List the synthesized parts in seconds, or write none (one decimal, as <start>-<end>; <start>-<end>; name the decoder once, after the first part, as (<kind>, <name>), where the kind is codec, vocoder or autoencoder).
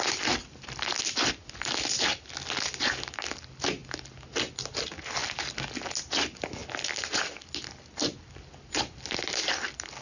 none